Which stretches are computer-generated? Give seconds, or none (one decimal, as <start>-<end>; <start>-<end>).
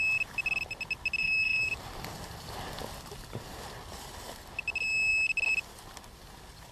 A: 1.2-1.8